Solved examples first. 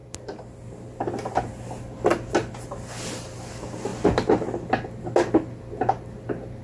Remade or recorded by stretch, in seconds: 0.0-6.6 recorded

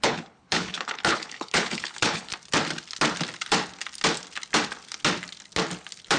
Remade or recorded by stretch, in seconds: 0.0-2.3 remade; 2.3-6.2 recorded

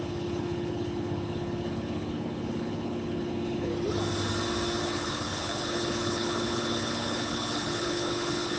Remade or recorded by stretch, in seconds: 0.0-3.7 remade; 3.7-4.8 recorded; 4.8-8.6 remade

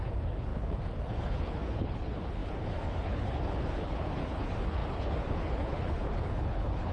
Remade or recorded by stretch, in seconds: 0.0-6.9 remade

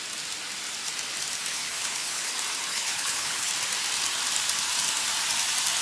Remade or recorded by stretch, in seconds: 0.0-1.5 recorded; 1.5-2.3 remade; 2.3-2.7 recorded; 2.7-3.5 remade; 3.5-5.8 recorded